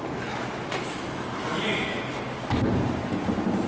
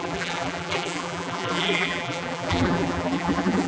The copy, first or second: second